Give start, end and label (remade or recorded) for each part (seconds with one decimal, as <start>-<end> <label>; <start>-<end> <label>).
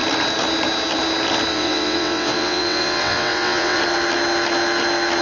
0.0-1.5 recorded; 1.5-3.8 remade; 3.8-5.2 recorded